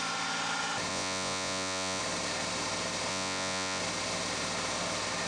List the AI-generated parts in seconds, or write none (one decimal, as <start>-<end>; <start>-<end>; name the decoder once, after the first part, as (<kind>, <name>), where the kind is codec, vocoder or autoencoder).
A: 0.9-2.0 (vocoder, Vocos); 3.1-3.8